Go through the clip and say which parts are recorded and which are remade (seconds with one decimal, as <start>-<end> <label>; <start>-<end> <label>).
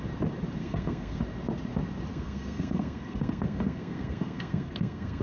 0.0-0.6 recorded; 0.6-1.2 remade; 1.2-2.1 recorded; 2.1-5.2 remade